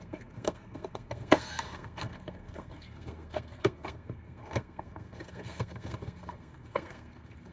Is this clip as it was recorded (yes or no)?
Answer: no